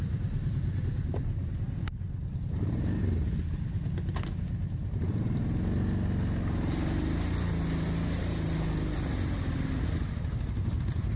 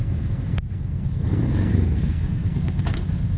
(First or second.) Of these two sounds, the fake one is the second